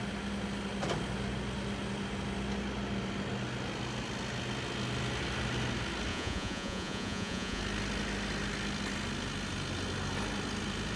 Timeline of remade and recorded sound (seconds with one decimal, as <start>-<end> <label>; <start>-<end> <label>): 0.0-6.1 recorded; 6.1-7.6 remade; 7.6-11.0 recorded